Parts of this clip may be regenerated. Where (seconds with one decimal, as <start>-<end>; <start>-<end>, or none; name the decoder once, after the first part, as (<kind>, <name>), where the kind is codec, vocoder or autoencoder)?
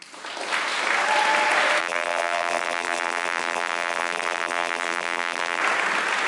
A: 1.8-5.6 (vocoder, BigVGAN v2)